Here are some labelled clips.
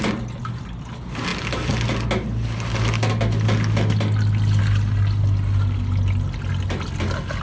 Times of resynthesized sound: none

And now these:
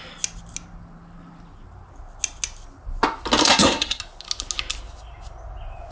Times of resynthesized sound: 3.4-4.0 (codec, SNAC)

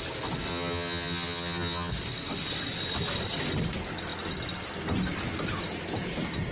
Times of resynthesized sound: 0.5-1.9 (vocoder, HiFi-GAN)

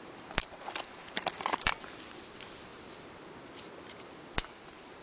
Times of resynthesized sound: 0.0-2.7 (vocoder, BigVGAN v2); 4.6-5.0

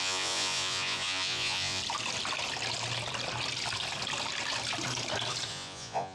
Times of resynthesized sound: 0.0-1.8 (vocoder, Vocos); 5.5-6.1